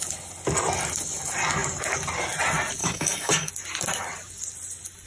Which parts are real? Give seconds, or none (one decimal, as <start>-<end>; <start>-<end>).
0.0-2.8; 3.5-5.1